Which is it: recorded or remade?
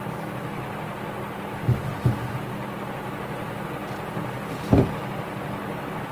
recorded